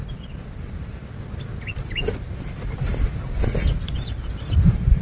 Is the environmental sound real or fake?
real